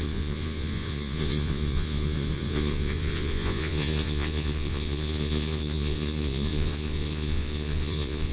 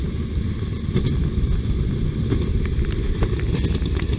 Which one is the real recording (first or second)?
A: second